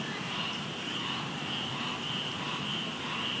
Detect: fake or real fake